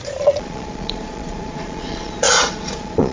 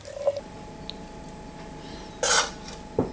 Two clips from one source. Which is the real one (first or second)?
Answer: second